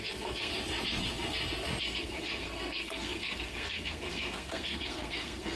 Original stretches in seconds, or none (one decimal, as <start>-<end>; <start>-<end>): 0.5-1.8